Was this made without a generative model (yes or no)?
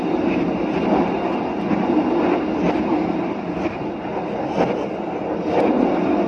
yes